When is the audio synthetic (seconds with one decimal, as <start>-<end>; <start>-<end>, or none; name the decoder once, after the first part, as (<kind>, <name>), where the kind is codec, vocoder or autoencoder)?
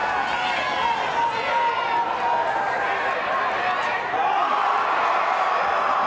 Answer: none